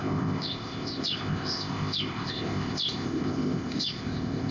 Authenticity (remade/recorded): remade